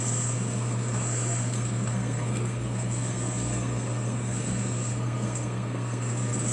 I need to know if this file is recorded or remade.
remade